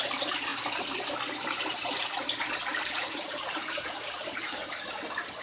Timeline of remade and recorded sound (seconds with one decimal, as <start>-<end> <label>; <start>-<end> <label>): 0.0-2.7 recorded; 2.7-4.8 remade; 4.8-5.4 recorded